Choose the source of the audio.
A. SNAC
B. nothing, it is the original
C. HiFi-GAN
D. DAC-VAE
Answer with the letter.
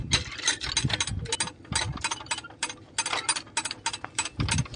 B